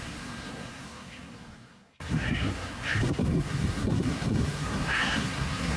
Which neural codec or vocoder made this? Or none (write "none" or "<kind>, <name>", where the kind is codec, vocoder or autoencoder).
codec, SNAC